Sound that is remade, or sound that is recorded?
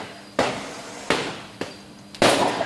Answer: remade